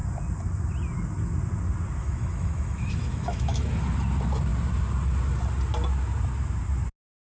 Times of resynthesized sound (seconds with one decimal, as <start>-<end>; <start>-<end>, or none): 2.0-3.7